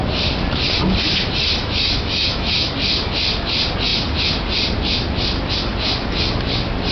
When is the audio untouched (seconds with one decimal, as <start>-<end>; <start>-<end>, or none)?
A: 0.0-1.6; 2.7-6.9